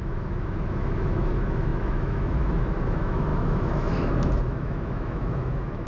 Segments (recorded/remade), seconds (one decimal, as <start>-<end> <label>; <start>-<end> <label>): 0.0-5.9 remade